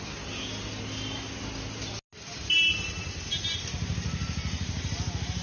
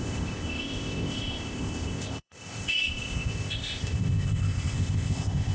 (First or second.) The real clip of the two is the first